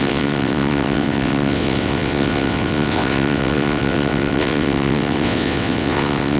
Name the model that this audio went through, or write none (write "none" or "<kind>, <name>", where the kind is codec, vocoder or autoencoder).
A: vocoder, WaveNeXt